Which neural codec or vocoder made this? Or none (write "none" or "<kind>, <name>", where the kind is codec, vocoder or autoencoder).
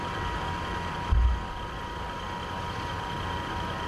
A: none